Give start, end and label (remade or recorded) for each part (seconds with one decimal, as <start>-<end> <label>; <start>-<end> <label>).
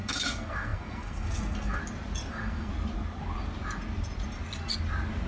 0.0-1.8 remade; 1.8-2.3 recorded; 2.3-2.7 remade; 2.7-5.3 recorded